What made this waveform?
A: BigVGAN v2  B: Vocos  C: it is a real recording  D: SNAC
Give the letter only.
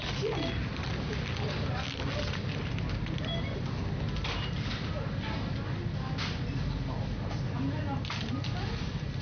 C